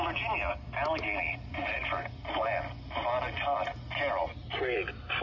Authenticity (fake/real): real